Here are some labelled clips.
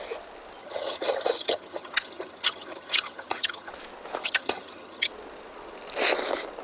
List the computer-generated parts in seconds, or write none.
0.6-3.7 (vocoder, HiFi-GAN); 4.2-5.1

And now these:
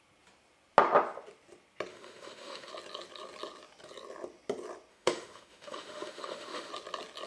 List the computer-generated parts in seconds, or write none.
1.9-2.7 (autoencoder, DAC-VAE); 4.9-6.7

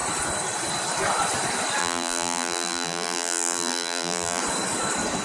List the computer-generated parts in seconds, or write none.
1.8-4.4 (vocoder, BigVGAN v2)

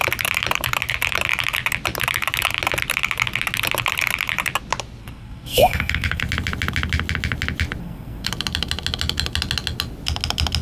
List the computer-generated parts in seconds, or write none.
5.0-6.2 (codec, SNAC); 7.8-8.3